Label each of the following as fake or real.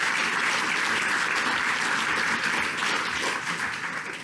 real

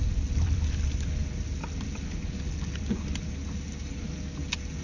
real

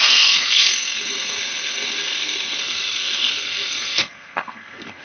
fake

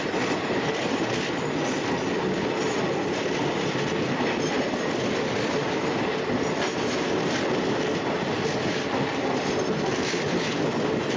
real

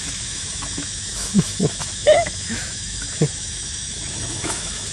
fake